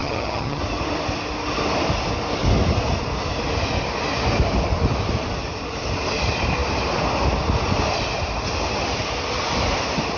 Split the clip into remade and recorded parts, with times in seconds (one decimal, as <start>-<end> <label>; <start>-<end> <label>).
0.0-0.6 remade; 0.6-10.2 recorded

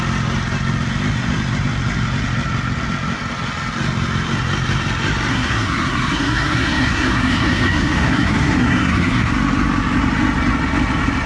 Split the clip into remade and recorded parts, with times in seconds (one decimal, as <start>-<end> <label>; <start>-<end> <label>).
0.0-5.3 recorded; 5.3-9.3 remade; 9.3-11.3 recorded

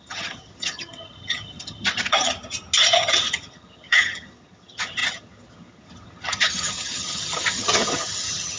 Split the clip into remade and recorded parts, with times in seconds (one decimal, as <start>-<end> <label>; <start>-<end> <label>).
0.0-2.3 remade; 2.3-2.8 recorded; 2.8-8.6 remade

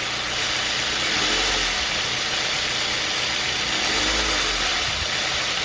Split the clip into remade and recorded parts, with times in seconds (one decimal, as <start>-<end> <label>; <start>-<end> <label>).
0.0-5.6 recorded

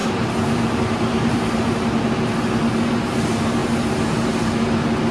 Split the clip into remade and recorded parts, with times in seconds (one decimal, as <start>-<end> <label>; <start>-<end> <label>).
0.0-1.7 remade; 1.7-5.1 recorded

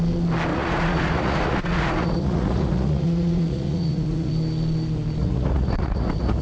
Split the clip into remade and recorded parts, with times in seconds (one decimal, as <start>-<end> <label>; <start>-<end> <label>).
0.0-0.5 recorded; 0.5-4.3 remade; 4.3-5.2 recorded; 5.2-6.4 remade

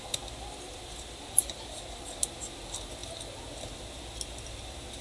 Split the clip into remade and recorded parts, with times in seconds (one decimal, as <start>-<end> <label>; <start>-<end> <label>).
0.0-5.0 recorded